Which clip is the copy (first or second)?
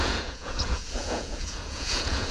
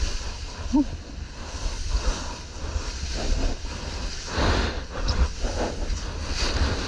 first